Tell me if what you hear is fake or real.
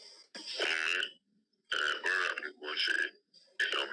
real